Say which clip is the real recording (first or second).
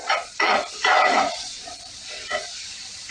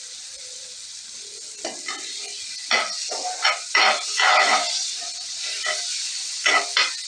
second